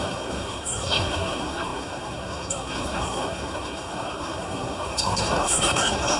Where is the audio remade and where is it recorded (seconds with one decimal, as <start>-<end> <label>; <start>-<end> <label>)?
0.0-6.2 remade